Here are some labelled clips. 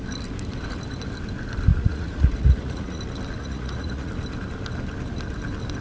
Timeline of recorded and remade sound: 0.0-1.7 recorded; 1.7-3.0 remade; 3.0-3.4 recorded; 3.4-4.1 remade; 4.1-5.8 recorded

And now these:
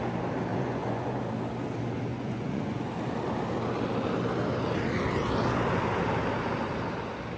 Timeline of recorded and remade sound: 0.0-0.5 recorded; 0.5-1.2 remade; 1.2-2.1 recorded; 2.1-2.9 remade; 2.9-7.4 recorded

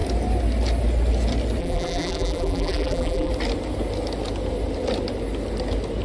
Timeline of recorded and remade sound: 0.0-1.6 recorded; 1.6-3.3 remade; 3.3-6.0 recorded